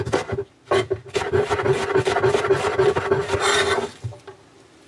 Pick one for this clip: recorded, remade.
recorded